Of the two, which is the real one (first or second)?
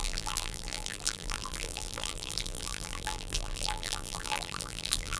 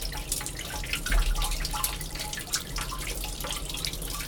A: second